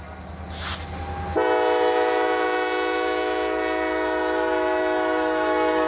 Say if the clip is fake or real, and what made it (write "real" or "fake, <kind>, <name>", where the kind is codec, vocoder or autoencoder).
real